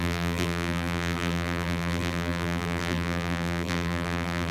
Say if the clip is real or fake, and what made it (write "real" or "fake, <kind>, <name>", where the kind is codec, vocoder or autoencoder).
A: fake, vocoder, BigVGAN v2